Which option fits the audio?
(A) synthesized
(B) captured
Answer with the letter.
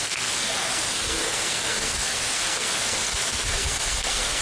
A